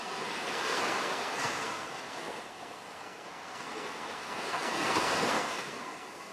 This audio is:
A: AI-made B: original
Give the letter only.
A